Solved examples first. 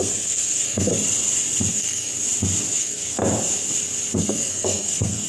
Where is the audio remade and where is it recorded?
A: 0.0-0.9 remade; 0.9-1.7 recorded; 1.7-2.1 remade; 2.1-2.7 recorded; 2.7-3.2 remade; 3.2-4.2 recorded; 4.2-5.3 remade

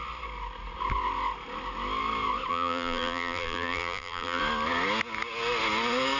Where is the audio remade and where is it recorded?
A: 0.0-2.5 recorded; 2.5-4.4 remade; 4.4-6.2 recorded

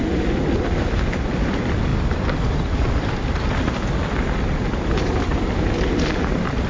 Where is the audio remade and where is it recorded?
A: 0.0-6.7 recorded

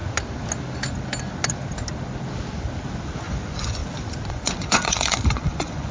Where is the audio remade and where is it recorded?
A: 0.0-3.2 recorded; 3.2-3.8 remade; 3.8-4.3 recorded; 4.3-5.9 remade

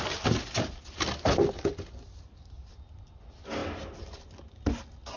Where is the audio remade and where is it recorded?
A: 0.0-5.2 recorded

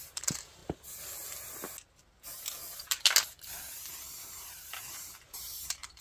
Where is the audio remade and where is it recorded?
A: 0.0-0.6 remade; 0.6-4.2 recorded; 4.2-6.0 remade